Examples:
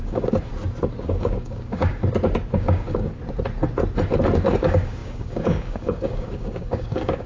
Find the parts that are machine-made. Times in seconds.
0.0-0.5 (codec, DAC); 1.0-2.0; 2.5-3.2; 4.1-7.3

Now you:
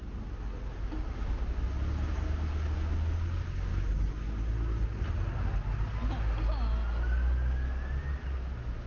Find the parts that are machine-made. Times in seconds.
none

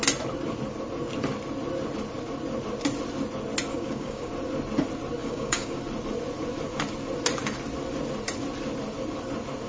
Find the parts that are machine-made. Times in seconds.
3.7-4.3 (codec, DAC); 5.2-5.8

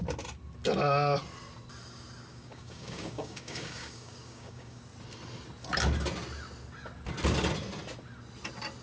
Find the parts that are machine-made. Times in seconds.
2.3-4.8 (codec, DAC)

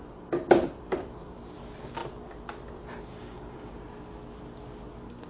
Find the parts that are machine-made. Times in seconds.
3.1-3.7 (codec, DAC)

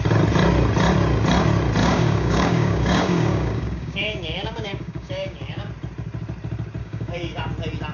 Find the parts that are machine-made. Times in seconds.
1.8-5.7 (codec, DAC); 6.8-7.5